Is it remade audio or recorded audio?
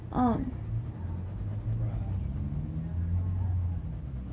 recorded